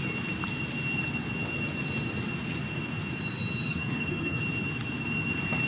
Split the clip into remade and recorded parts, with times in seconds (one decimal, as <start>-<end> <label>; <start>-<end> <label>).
0.0-3.7 recorded; 3.7-4.4 remade; 4.4-5.7 recorded